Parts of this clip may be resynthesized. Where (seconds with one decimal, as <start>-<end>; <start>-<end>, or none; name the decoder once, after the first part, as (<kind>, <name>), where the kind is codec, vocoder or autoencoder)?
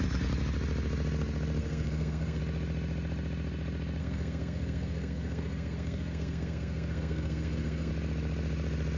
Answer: 1.6-2.4 (codec, SNAC); 4.0-7.9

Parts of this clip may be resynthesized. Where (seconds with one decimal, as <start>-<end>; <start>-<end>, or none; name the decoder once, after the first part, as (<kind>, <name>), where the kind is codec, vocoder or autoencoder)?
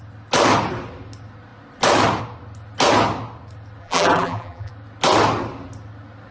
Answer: 3.8-4.7 (vocoder, BigVGAN v2)